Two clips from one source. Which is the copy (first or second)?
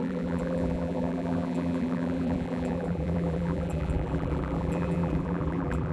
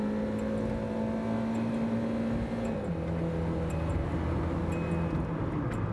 first